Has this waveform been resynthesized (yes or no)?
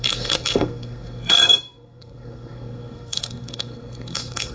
yes